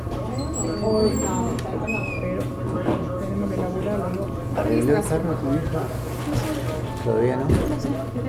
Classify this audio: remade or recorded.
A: recorded